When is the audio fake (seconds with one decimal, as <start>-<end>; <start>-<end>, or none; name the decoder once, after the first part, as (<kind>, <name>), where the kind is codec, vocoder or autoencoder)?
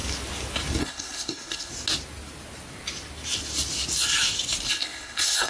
0.8-1.7 (codec, HILCodec); 4.7-5.5